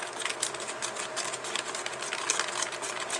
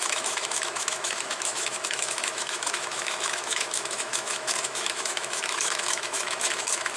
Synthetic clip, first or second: second